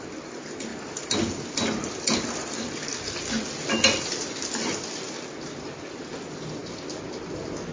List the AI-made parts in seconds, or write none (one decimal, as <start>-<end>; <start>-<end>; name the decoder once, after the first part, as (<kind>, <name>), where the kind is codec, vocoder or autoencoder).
0.7-4.8 (vocoder, BigVGAN v2)